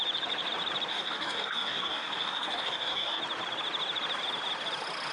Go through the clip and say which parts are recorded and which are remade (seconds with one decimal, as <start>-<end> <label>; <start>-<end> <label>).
0.0-0.9 recorded; 0.9-3.2 remade; 3.2-5.1 recorded